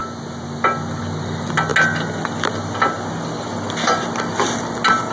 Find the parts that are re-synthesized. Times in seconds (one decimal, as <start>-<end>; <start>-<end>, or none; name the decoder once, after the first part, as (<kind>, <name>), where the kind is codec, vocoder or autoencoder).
none